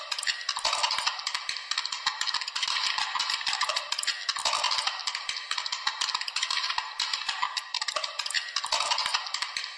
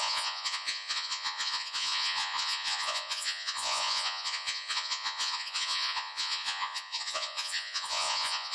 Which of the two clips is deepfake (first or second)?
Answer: second